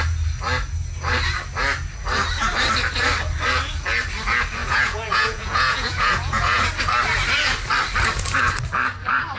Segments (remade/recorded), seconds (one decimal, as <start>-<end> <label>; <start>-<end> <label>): 0.0-4.6 recorded; 4.6-6.6 remade; 6.6-9.4 recorded